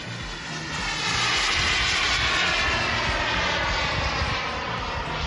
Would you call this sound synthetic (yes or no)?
no